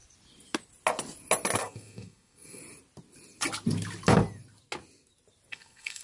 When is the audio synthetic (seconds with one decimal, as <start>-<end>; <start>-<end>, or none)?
1.6-2.6; 5.5-6.0